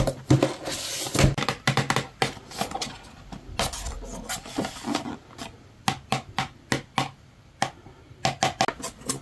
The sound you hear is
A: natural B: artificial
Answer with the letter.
A